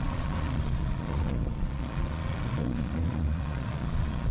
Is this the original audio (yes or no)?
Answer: no